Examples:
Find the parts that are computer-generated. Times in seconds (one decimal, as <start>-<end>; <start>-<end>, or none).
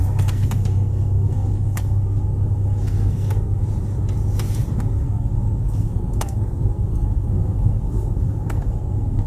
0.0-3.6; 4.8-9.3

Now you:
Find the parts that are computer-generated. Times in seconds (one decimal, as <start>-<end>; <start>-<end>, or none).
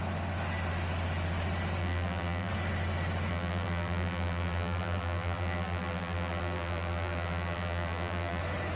1.8-2.5; 3.3-8.4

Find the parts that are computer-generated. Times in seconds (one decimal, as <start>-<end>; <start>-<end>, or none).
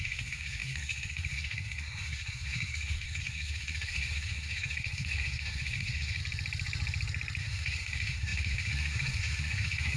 0.0-6.2; 7.4-10.0